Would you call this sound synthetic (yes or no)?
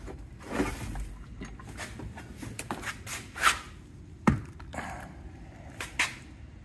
no